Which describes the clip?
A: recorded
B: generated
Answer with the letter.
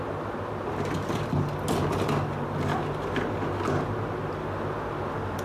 A